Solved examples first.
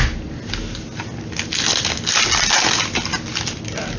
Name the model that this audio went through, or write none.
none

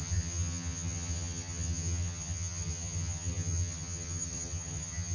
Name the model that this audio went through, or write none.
vocoder, HiFi-GAN